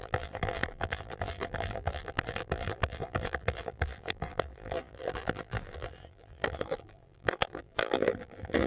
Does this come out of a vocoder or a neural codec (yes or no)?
yes